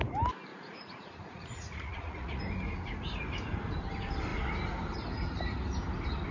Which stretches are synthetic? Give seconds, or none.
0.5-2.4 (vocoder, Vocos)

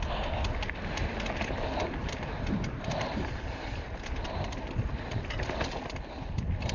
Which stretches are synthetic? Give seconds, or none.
2.0-4.7 (vocoder, BigVGAN v2)

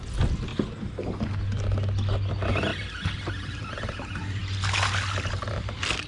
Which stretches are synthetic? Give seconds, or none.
none

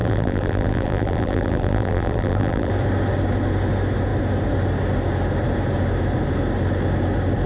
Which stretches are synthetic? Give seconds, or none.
0.0-2.7 (vocoder, BigVGAN v2)

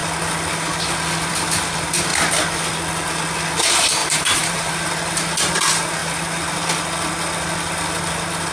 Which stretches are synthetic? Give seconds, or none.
4.0-4.7 (vocoder, BigVGAN v2)